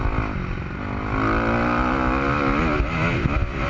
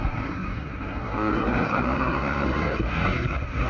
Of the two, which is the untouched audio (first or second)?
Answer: first